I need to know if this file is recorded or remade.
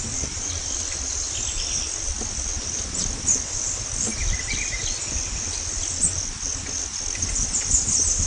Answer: recorded